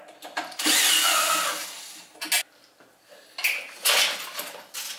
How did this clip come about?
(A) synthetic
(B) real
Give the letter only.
B